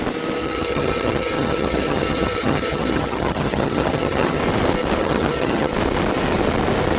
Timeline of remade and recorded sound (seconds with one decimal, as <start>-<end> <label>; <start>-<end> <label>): 0.0-0.4 recorded; 0.4-4.4 remade; 4.4-5.0 recorded; 5.0-5.7 remade; 5.7-7.0 recorded